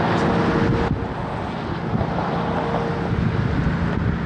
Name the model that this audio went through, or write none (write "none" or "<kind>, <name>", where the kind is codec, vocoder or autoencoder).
none